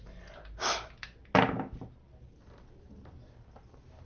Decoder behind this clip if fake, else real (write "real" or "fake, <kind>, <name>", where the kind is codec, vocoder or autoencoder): real